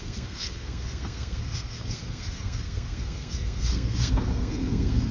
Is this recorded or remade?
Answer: remade